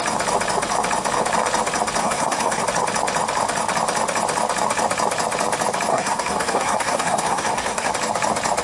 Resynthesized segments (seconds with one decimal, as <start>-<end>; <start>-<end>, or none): 2.0-2.6; 5.9-7.9